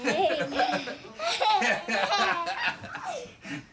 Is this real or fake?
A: real